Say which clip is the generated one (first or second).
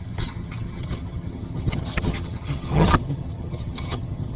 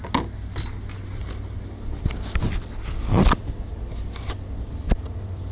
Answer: first